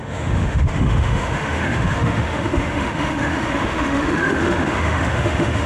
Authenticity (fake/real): fake